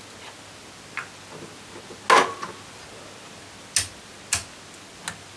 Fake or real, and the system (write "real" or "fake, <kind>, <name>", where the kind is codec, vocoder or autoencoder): real